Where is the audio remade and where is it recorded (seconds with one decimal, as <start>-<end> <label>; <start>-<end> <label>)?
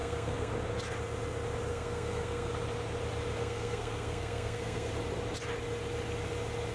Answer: 0.0-0.5 remade; 0.5-1.7 recorded; 1.7-2.5 remade; 2.5-3.4 recorded; 3.4-4.9 remade; 4.9-6.7 recorded